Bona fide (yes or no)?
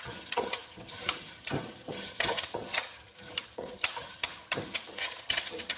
no